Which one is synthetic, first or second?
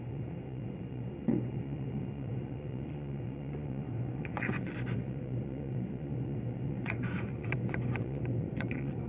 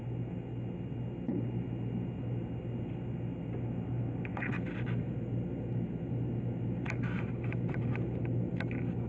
first